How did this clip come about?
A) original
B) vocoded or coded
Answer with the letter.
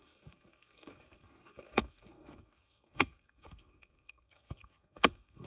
B